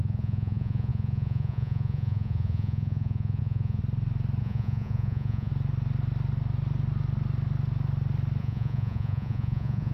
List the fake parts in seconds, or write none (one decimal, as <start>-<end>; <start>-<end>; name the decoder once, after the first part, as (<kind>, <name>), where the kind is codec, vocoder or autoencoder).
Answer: 0.0-3.8 (vocoder, Vocos); 4.4-5.5; 8.4-9.9